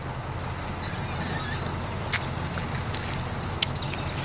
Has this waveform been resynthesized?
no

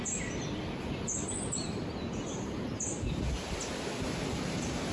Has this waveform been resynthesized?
no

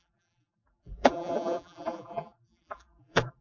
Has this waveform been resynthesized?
yes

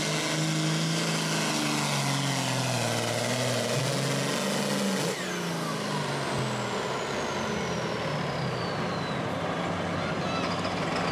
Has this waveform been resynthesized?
no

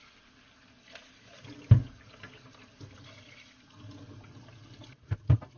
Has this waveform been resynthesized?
no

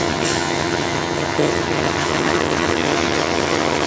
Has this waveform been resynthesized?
yes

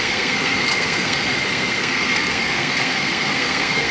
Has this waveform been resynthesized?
yes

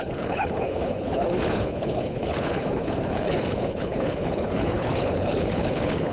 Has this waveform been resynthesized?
yes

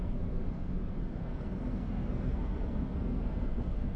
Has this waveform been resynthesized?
yes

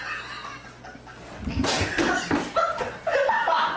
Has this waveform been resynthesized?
no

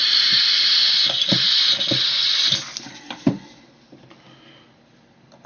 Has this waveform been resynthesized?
no